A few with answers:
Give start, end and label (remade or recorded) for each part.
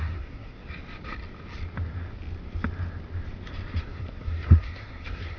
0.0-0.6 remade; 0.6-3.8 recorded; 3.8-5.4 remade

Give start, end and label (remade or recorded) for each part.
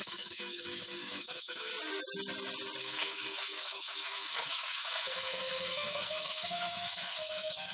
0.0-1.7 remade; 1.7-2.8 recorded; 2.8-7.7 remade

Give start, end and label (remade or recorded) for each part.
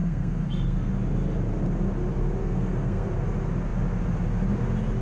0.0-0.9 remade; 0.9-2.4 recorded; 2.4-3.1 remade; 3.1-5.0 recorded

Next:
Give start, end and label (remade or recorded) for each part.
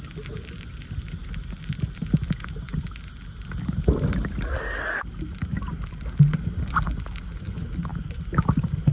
0.0-8.9 recorded